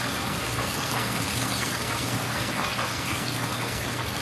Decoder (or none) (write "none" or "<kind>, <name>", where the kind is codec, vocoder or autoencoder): codec, SNAC